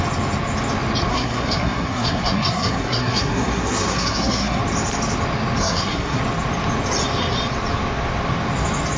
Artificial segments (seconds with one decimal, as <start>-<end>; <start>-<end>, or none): 1.1-4.6; 5.6-6.2

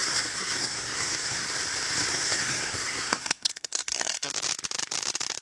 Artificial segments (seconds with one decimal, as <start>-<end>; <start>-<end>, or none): 0.0-1.5; 2.1-4.3

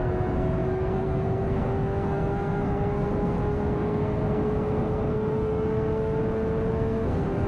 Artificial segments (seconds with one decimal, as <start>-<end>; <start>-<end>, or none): 0.0-6.2; 6.7-7.5

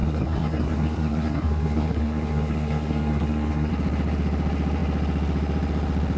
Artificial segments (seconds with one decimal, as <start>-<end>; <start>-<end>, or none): 0.0-3.7